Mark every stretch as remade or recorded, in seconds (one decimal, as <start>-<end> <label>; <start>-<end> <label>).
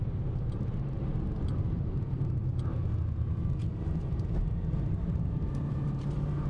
0.0-1.1 remade; 1.1-1.7 recorded; 1.7-2.4 remade; 2.4-3.2 recorded; 3.2-6.5 remade